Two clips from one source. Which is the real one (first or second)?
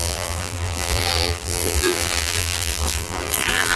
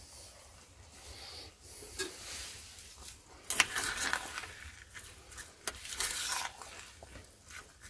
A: second